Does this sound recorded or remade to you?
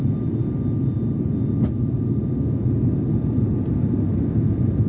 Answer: recorded